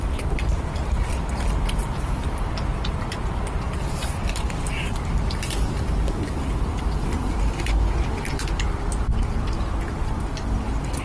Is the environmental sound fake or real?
real